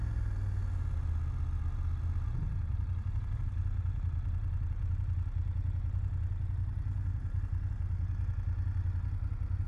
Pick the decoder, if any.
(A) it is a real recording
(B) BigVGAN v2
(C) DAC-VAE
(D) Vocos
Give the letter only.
A